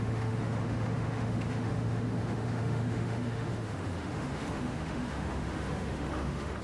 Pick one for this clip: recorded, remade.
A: remade